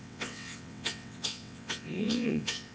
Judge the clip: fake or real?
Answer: fake